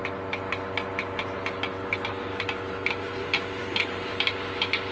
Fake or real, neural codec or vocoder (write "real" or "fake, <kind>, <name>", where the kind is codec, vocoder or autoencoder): real